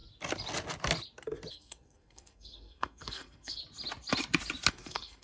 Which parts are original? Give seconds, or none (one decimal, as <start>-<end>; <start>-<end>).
0.0-1.5; 3.6-4.7